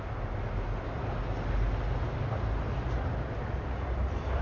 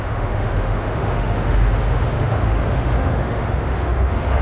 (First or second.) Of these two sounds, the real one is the first